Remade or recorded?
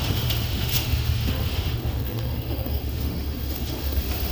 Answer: remade